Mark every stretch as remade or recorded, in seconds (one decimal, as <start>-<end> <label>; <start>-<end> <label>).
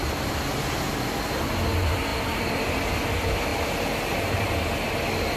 0.0-0.6 remade; 0.6-2.1 recorded; 2.1-2.8 remade; 2.8-5.4 recorded